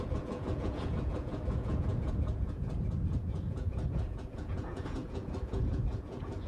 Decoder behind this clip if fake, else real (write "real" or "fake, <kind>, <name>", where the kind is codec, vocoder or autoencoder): fake, vocoder, Vocos